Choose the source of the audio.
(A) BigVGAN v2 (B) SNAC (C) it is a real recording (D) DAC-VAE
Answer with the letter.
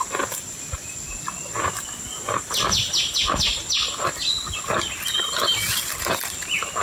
C